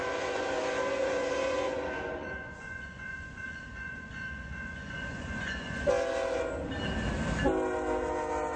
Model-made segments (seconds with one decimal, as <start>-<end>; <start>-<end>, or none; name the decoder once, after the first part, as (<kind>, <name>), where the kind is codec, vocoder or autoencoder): 0.0-0.6 (vocoder, Vocos); 1.0-5.8